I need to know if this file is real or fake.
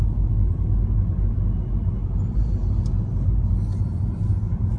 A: real